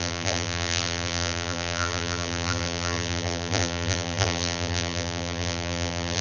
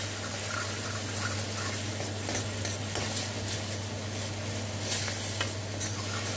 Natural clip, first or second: second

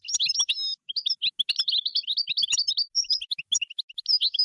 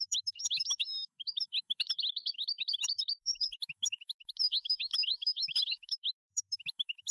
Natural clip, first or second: first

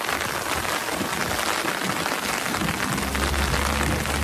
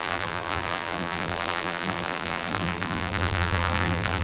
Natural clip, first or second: first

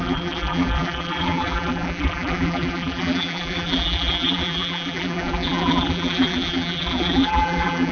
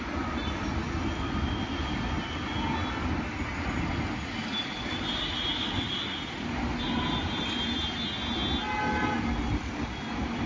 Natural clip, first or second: second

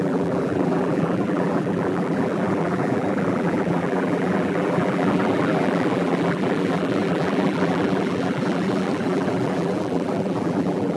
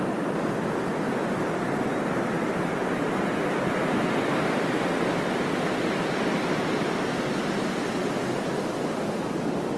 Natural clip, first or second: second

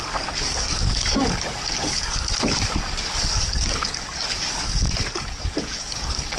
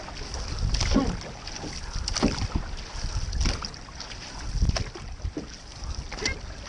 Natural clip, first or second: second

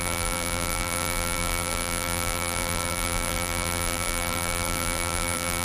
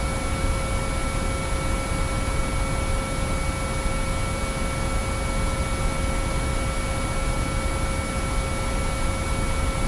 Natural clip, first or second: second